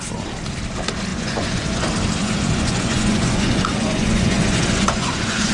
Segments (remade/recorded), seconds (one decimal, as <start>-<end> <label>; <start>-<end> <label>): 0.0-1.1 recorded; 1.1-1.8 remade; 1.8-2.2 recorded; 2.2-5.5 remade

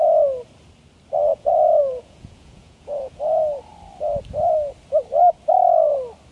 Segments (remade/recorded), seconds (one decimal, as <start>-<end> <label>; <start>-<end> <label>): 0.0-1.3 recorded; 1.3-3.2 remade; 3.2-6.3 recorded

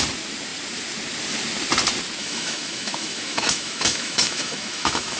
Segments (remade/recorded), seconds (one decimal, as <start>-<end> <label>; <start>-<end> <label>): 0.0-2.2 recorded; 2.2-5.2 remade

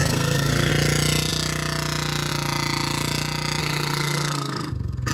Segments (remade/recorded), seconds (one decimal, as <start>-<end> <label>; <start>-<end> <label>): 0.0-0.7 remade; 0.7-3.6 recorded; 3.6-5.1 remade